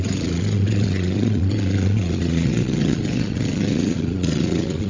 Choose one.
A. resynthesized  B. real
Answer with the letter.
A